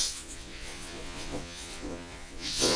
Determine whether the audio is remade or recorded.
remade